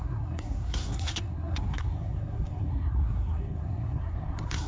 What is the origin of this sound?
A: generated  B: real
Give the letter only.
A